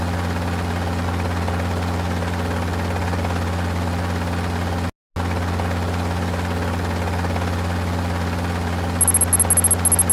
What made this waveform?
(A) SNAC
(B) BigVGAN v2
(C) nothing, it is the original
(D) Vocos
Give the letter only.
C